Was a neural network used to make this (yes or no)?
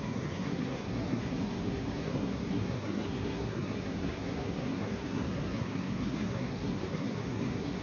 yes